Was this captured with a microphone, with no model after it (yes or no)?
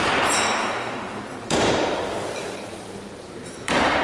no